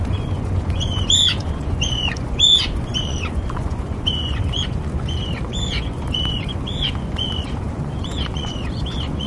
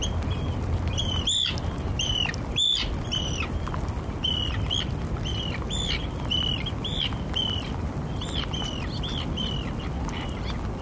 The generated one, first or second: first